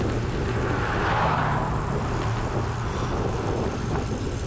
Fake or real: real